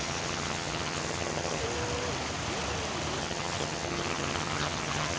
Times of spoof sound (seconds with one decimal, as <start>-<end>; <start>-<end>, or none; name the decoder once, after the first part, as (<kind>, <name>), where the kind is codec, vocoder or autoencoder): 0.0-1.6 (vocoder, HiFi-GAN); 3.2-5.2